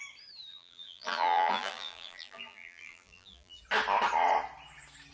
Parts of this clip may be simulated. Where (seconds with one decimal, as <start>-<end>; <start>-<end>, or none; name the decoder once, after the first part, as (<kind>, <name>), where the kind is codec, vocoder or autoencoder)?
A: 0.5-3.6 (vocoder, BigVGAN v2)